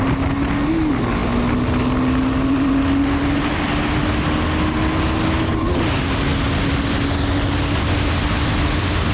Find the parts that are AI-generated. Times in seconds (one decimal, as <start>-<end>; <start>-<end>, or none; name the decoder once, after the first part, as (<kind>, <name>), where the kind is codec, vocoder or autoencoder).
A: none